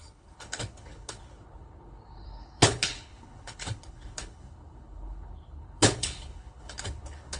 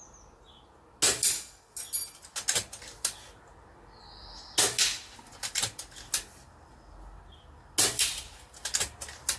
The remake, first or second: first